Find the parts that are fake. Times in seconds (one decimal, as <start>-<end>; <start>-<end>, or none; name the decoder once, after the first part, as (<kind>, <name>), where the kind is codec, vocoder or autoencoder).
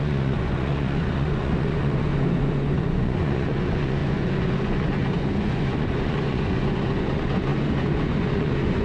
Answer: 0.0-8.8 (vocoder, Vocos)